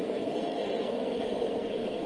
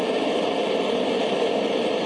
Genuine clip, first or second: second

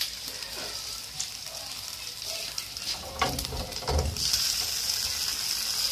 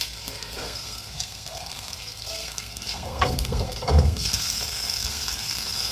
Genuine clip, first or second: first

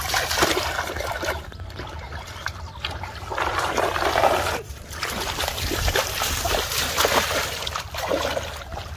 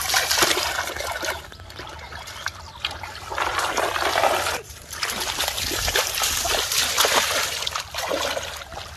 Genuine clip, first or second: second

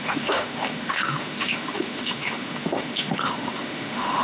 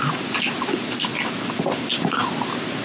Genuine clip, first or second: second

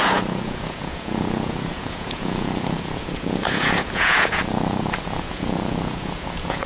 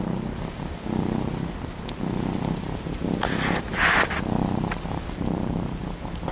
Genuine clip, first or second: second